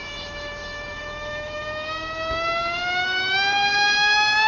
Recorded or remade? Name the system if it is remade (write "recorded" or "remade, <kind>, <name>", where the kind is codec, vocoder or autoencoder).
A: remade, autoencoder, DAC-VAE